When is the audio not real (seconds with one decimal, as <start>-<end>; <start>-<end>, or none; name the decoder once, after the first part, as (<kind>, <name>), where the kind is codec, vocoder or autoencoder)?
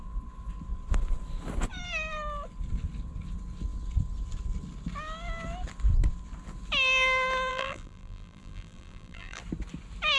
7.5-9.4 (vocoder, BigVGAN v2)